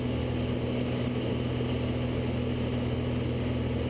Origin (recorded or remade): recorded